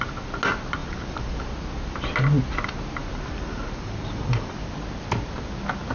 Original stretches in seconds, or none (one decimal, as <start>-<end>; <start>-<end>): 0.0-0.8; 1.4-3.0; 4.7-5.9